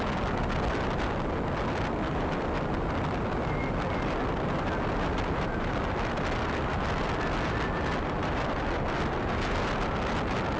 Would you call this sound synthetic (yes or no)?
no